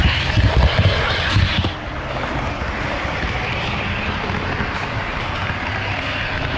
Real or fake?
real